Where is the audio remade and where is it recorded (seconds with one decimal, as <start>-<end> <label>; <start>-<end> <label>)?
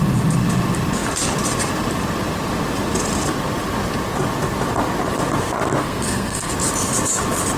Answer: 0.0-5.8 recorded; 5.8-6.5 remade; 6.5-7.6 recorded